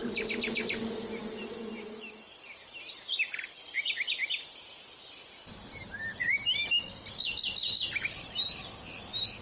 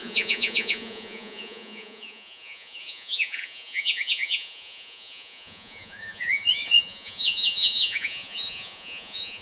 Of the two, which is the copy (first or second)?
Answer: second